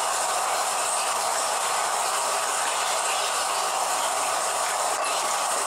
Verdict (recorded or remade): recorded